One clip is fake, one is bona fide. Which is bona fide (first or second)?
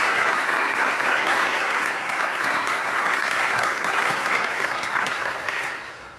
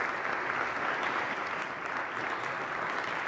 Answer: second